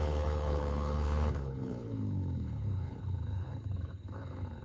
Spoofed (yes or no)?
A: yes